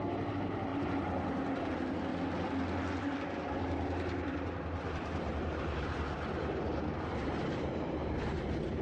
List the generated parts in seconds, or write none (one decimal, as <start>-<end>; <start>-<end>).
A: 0.0-2.1; 3.0-8.8